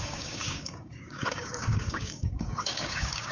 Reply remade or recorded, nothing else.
remade